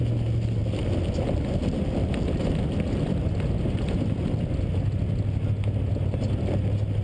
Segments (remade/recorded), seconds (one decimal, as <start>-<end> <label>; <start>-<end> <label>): 0.0-7.0 recorded